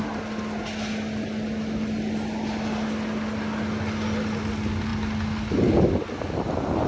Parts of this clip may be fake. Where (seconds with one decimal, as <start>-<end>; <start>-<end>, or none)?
none